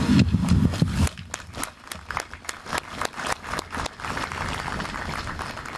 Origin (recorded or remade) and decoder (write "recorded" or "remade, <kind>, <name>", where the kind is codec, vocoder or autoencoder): recorded